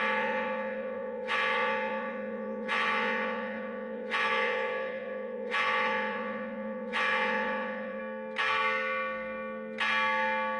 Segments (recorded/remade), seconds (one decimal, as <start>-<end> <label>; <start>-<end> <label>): 0.0-8.0 remade; 8.0-10.6 recorded